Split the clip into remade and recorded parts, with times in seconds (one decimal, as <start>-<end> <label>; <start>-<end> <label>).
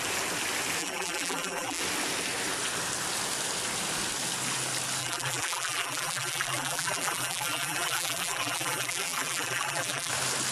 0.0-0.8 recorded; 0.8-1.8 remade; 1.8-5.0 recorded; 5.0-10.1 remade; 10.1-10.5 recorded